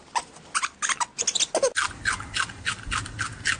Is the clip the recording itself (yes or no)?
yes